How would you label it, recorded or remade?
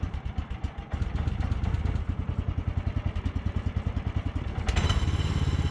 recorded